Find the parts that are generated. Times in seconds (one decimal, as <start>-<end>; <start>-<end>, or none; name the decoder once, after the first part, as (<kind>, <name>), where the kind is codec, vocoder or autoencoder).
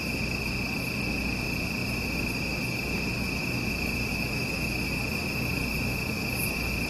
4.1-4.9 (autoencoder, DAC-VAE)